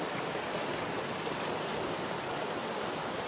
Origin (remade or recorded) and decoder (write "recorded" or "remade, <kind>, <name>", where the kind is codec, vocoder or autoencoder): recorded